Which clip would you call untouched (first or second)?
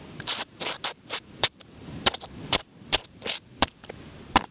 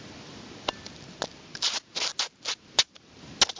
second